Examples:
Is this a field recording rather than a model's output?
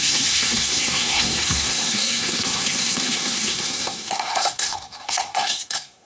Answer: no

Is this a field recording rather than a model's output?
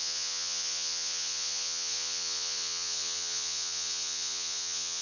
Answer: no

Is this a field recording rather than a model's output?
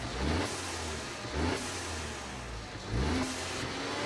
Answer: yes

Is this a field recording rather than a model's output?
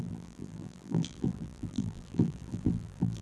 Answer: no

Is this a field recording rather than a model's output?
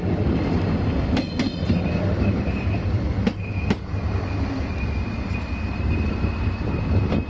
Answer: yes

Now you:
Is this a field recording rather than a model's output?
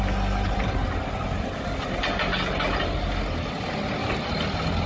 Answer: yes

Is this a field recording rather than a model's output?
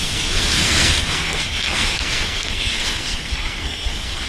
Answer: no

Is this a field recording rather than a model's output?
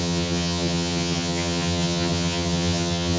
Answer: no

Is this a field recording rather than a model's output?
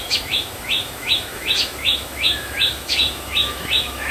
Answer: no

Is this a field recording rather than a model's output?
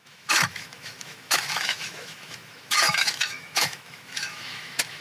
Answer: no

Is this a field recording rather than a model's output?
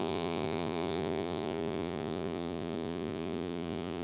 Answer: no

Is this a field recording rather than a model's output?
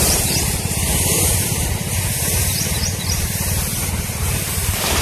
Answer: no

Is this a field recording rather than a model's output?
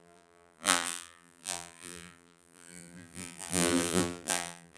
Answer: no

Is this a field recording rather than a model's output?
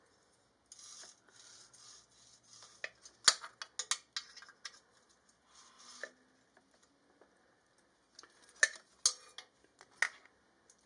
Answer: yes